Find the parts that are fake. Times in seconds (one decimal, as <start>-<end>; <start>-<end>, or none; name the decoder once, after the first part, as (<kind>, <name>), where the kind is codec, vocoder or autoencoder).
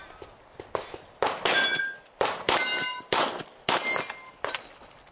none